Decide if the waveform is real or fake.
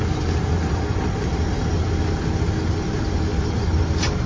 real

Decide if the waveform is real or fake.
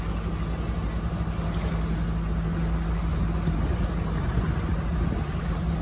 real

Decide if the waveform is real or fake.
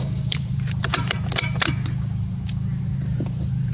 fake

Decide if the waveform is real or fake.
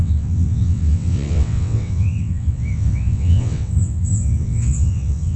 fake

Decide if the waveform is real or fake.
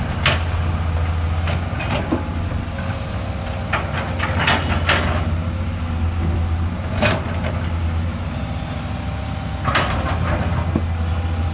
real